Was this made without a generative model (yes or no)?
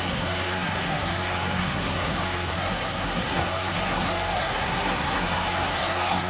no